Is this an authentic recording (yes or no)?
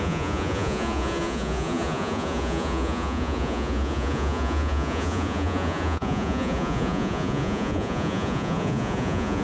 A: no